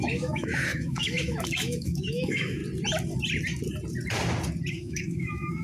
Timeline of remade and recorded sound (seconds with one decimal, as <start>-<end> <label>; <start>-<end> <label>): 0.0-2.6 remade; 2.6-4.7 recorded; 4.7-5.6 remade